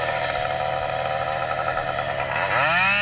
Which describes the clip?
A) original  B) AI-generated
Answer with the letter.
A